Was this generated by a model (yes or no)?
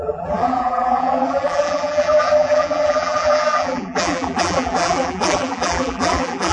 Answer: yes